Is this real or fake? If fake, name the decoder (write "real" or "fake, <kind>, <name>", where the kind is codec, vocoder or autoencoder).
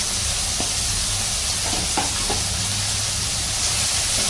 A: real